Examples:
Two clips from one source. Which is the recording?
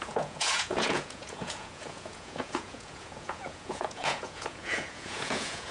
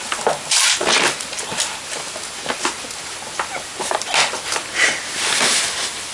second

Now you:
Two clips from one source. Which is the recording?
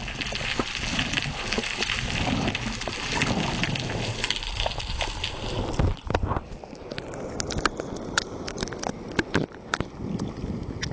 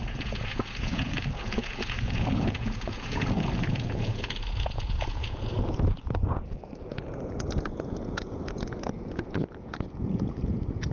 first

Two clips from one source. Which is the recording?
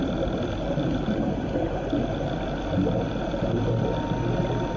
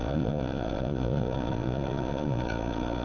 first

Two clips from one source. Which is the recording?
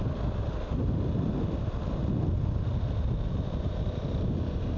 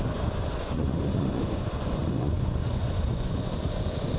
first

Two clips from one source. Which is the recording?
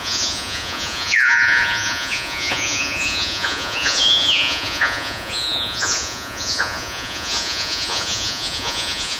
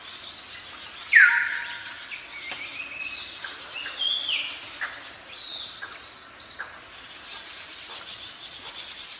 second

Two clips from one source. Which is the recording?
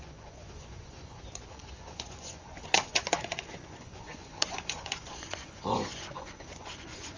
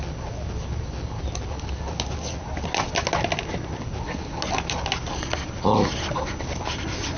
second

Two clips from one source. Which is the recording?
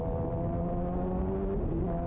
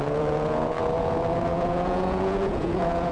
first